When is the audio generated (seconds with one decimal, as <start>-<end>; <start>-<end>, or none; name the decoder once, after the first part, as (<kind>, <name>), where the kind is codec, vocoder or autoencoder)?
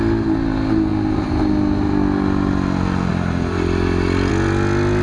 none